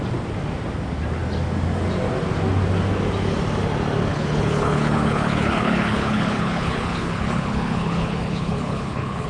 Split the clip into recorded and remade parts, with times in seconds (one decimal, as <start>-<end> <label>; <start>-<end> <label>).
0.0-4.1 recorded; 4.1-9.3 remade